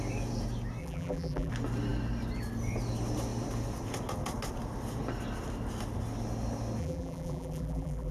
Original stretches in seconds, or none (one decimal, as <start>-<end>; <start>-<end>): 0.0-0.8; 1.5-6.8